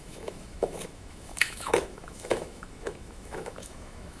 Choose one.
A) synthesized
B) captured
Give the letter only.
A